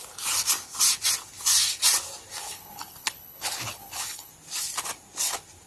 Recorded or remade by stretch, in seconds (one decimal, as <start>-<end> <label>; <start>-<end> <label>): 0.0-2.4 recorded; 2.4-4.3 remade; 4.3-5.7 recorded